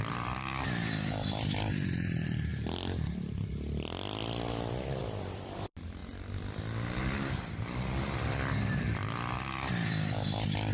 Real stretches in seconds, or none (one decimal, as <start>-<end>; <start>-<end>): 2.5-5.0; 6.0-9.7